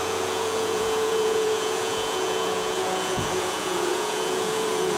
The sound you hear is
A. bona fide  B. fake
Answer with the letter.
B